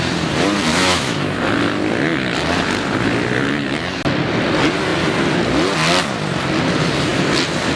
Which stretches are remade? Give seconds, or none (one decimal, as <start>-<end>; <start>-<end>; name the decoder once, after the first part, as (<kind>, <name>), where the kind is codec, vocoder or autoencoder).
0.7-1.4 (autoencoder, DAC-VAE)